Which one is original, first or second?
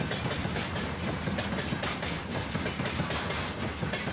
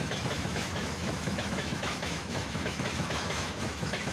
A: first